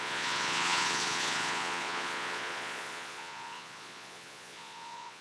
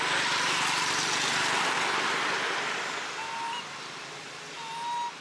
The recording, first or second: second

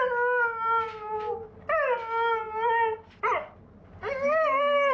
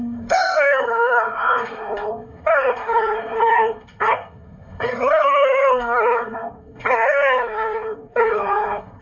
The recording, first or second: first